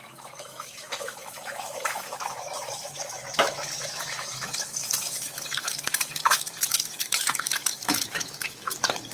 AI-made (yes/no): yes